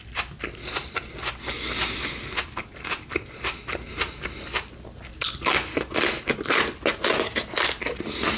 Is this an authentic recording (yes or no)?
yes